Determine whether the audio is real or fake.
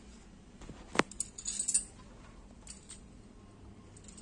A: real